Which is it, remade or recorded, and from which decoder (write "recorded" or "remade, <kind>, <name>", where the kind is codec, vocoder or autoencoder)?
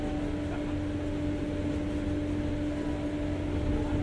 recorded